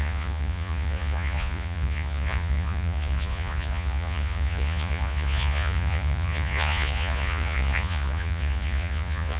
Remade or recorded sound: remade